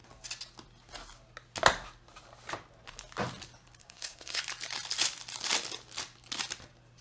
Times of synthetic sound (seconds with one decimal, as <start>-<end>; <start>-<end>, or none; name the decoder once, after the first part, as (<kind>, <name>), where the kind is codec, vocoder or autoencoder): 3.8-4.4 (codec, SNAC)